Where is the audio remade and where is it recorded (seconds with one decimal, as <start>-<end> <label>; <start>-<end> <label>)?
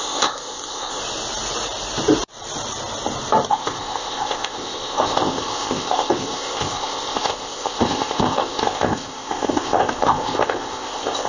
0.0-1.0 remade; 1.0-3.5 recorded; 3.5-11.3 remade